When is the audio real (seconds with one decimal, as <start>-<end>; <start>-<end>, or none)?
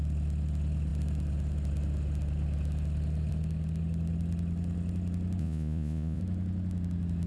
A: 0.0-5.4; 6.2-7.3